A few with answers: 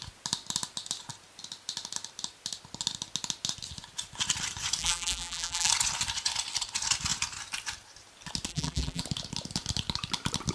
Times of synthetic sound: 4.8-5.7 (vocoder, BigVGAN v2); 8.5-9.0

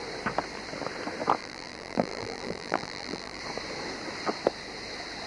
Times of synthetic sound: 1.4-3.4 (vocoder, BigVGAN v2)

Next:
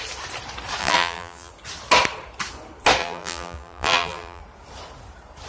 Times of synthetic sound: 0.8-1.5 (vocoder, BigVGAN v2); 3.0-4.4

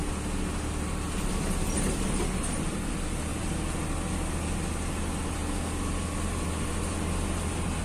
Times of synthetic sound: none